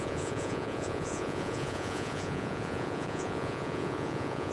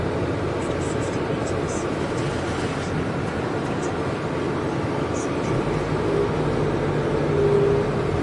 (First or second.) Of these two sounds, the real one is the second